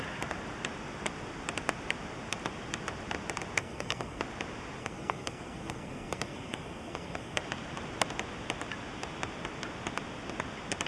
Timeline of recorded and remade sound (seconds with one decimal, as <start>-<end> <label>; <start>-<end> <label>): 0.0-3.6 recorded; 3.6-4.2 remade; 4.2-4.8 recorded; 4.8-7.4 remade; 7.4-10.9 recorded